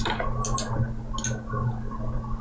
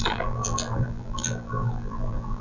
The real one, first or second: first